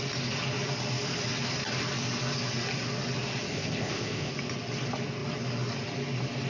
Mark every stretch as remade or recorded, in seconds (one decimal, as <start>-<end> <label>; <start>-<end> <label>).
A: 0.0-3.5 recorded; 3.5-4.3 remade; 4.3-6.5 recorded